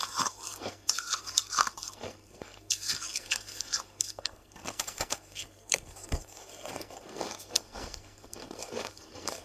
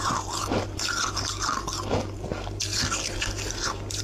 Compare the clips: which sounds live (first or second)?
second